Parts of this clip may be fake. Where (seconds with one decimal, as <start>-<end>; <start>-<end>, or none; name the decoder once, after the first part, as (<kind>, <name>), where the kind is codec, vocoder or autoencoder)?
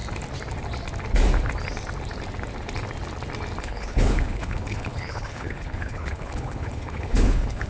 3.6-7.7 (codec, HILCodec)